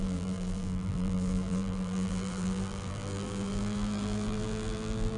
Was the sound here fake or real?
fake